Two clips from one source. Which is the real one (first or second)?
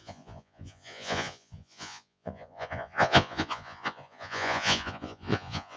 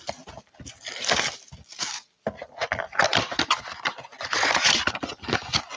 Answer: second